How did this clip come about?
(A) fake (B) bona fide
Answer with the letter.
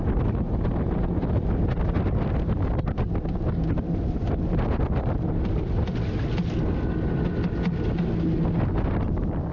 B